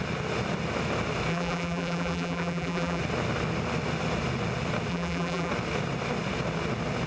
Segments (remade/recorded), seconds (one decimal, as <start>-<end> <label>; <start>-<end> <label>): 0.0-1.3 recorded; 1.3-3.0 remade; 3.0-4.9 recorded; 4.9-5.5 remade; 5.5-7.1 recorded